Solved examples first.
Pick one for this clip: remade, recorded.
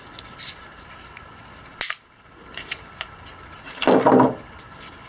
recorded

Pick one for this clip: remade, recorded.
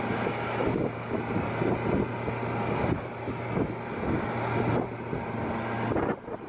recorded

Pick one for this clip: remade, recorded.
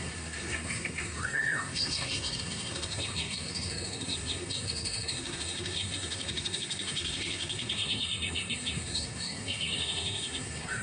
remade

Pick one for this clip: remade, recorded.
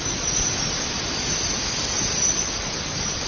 recorded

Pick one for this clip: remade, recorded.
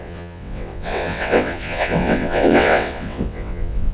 remade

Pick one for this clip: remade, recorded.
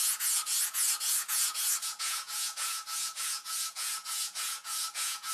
remade